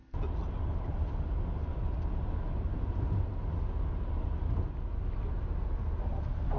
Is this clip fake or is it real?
real